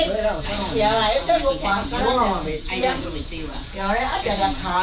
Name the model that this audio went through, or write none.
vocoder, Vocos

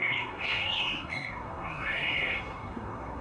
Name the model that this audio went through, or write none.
codec, SNAC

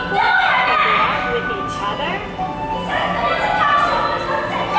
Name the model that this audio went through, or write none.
none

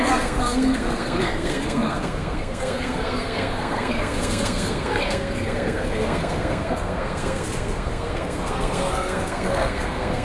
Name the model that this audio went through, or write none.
codec, SNAC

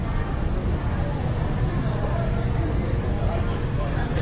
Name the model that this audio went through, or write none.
none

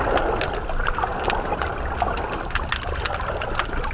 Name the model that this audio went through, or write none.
none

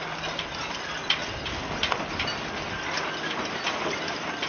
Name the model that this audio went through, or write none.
none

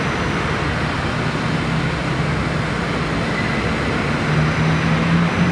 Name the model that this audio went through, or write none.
none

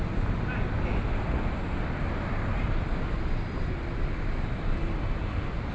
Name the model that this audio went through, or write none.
none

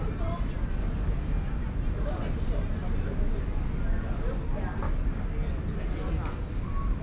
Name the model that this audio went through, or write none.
none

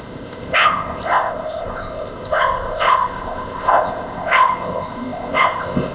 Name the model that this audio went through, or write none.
codec, ZipCodec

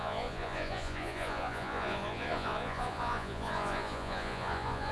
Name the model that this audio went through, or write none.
vocoder, Vocos